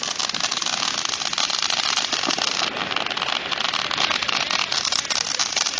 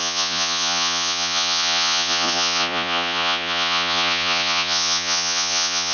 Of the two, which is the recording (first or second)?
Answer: first